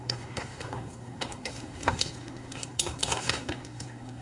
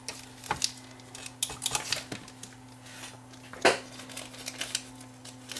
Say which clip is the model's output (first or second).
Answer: first